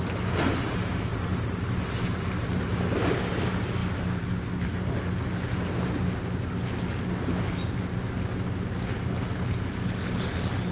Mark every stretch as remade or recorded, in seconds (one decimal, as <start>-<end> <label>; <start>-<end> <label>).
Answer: 0.0-10.7 recorded